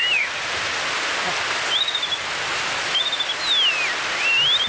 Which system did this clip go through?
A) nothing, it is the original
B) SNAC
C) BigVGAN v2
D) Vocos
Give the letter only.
A